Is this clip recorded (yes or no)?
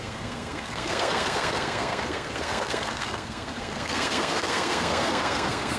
no